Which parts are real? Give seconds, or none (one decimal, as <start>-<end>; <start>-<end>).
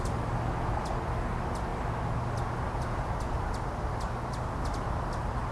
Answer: 0.0-5.5